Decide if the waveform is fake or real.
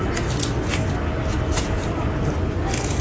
real